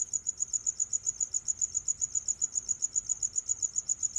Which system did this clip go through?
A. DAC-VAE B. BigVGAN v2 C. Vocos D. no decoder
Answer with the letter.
D